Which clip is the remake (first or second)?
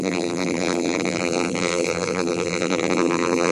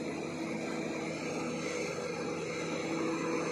first